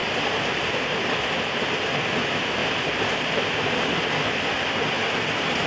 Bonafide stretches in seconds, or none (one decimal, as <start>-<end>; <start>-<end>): 0.0-2.6; 3.9-5.7